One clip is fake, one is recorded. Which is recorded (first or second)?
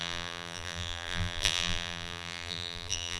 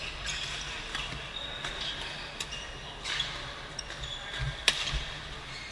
second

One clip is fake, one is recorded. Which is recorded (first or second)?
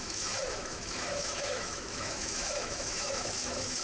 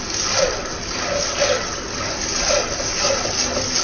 second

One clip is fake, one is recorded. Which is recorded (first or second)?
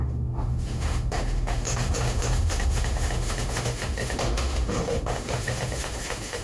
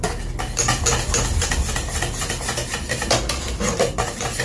second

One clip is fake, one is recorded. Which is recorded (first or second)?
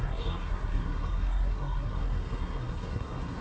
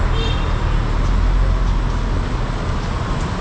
second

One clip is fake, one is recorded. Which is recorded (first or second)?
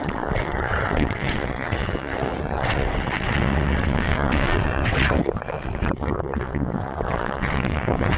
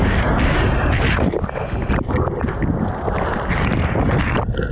second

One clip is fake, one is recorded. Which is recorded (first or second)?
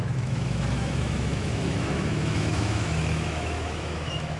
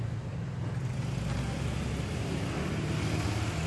second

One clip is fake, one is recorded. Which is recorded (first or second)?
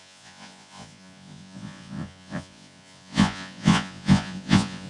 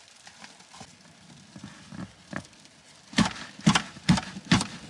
second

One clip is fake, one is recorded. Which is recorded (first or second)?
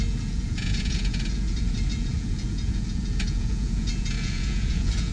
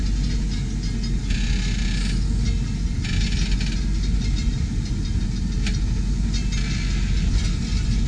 second